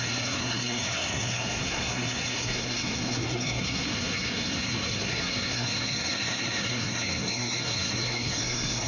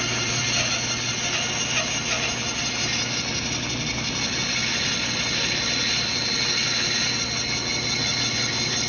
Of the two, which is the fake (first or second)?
first